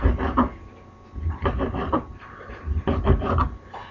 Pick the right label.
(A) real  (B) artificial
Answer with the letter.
A